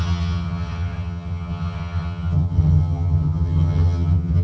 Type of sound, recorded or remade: remade